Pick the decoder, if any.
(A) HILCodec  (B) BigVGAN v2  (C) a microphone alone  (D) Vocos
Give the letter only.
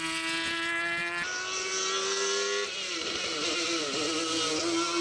C